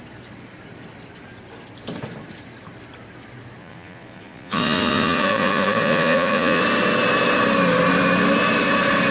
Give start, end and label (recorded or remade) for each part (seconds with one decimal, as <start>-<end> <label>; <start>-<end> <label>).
0.0-3.6 recorded; 3.6-6.6 remade; 6.6-9.1 recorded